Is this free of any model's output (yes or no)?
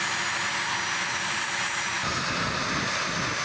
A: yes